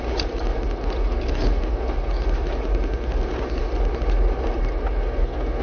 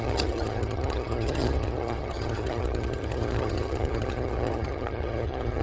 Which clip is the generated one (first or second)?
second